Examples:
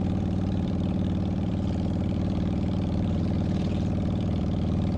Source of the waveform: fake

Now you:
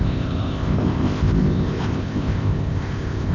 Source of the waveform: fake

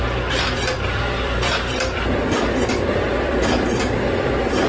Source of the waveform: fake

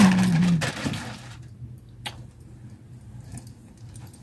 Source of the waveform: real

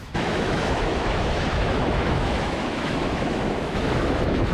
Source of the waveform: fake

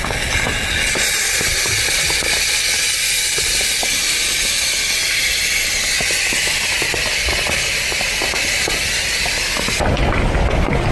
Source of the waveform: real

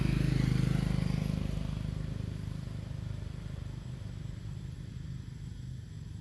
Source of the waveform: real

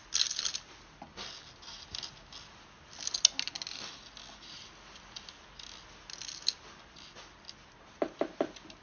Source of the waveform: real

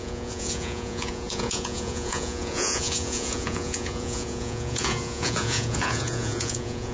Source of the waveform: fake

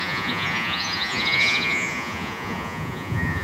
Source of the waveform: fake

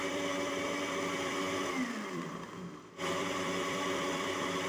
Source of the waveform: fake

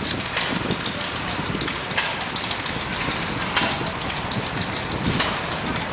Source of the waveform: real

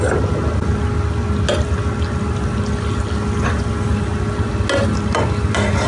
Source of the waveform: real